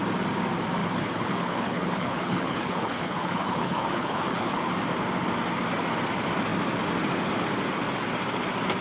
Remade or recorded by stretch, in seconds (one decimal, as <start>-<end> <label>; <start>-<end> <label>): 0.0-0.8 recorded; 0.8-4.7 remade; 4.7-8.8 recorded